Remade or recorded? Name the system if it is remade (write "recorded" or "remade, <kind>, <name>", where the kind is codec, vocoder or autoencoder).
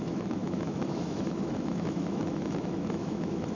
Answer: remade, autoencoder, DAC-VAE